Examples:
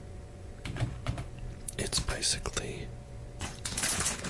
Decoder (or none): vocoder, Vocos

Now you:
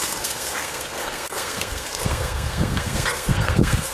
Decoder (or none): codec, SNAC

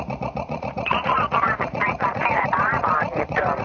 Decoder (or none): vocoder, Vocos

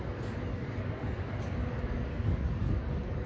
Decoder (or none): codec, DAC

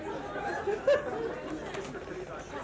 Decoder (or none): none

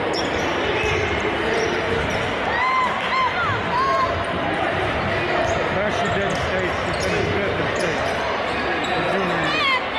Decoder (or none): none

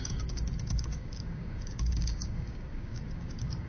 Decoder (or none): codec, DAC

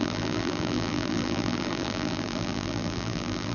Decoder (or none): vocoder, BigVGAN v2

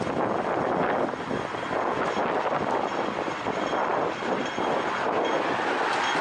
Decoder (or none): none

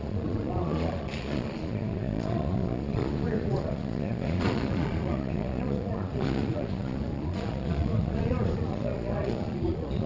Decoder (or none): vocoder, Vocos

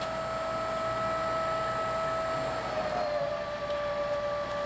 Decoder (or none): none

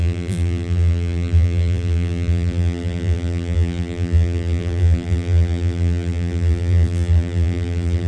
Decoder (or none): vocoder, BigVGAN v2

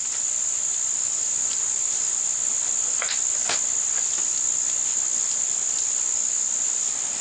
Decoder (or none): none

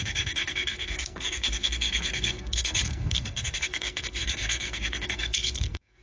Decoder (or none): codec, SNAC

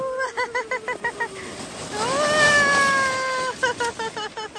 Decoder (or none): none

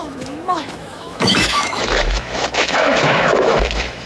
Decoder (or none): autoencoder, DAC-VAE